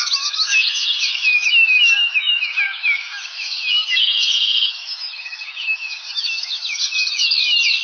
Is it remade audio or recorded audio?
remade